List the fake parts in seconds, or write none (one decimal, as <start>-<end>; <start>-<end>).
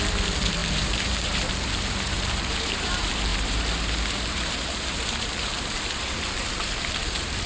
0.0-7.5